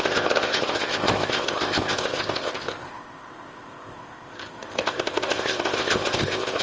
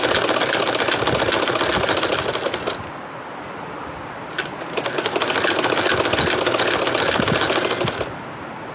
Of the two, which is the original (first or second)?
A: second